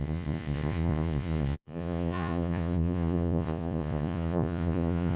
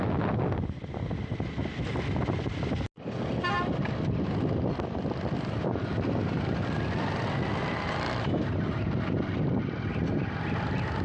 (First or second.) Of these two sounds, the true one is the second